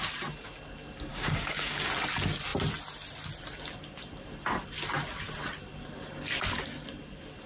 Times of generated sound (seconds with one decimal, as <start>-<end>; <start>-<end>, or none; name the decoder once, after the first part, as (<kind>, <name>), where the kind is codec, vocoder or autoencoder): 1.1-1.9 (codec, DAC)

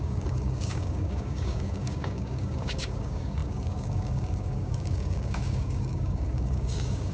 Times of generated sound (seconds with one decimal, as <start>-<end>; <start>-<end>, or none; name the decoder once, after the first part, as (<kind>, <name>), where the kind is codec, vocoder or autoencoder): 0.0-7.1 (codec, DAC)

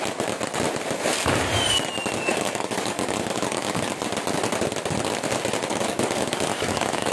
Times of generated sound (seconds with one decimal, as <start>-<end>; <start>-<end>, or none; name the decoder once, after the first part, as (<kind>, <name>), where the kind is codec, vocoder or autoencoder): 2.3-3.9 (codec, DAC); 5.7-7.1

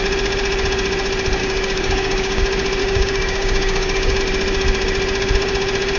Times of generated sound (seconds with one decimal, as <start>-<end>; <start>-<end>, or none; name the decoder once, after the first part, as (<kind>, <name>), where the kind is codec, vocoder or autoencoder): 1.4-2.4 (codec, DAC); 2.8-4.2

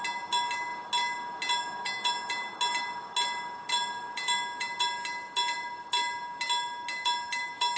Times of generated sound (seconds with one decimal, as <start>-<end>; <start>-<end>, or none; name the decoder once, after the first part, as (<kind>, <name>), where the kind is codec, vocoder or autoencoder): none

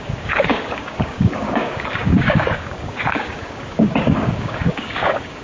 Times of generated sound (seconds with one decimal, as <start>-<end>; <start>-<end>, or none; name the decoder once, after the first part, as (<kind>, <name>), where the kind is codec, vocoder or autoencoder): 0.0-5.4 (codec, DAC)

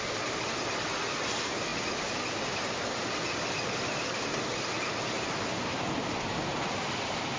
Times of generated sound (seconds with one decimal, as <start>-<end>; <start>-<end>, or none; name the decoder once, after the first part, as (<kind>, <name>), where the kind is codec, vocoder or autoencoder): none

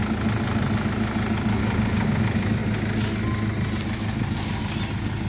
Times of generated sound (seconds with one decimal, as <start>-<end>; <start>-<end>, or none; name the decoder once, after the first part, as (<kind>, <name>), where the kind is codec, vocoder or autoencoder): 1.6-2.2 (codec, DAC)